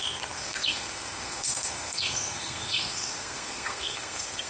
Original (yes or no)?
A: no